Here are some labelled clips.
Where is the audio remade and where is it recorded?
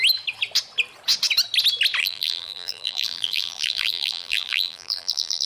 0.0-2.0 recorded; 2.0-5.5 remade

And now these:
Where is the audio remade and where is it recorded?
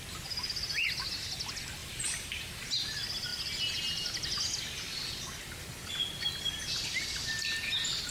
0.0-1.8 recorded; 1.8-2.5 remade; 2.5-8.1 recorded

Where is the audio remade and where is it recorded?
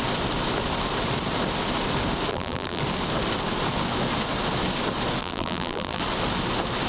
0.0-2.3 recorded; 2.3-2.8 remade; 2.8-5.2 recorded; 5.2-6.0 remade; 6.0-6.9 recorded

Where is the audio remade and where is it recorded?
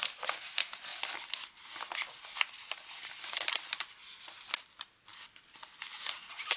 0.0-6.6 recorded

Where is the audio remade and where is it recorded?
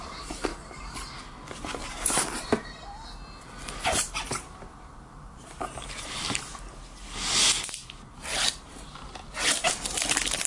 0.0-0.5 remade; 0.5-4.1 recorded; 4.1-6.5 remade; 6.5-8.6 recorded; 8.6-10.5 remade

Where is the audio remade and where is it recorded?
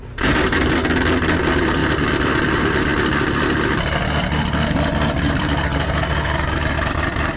0.0-0.8 remade; 0.8-1.4 recorded; 1.4-1.8 remade; 1.8-2.5 recorded; 2.5-2.9 remade; 2.9-5.3 recorded; 5.3-7.4 remade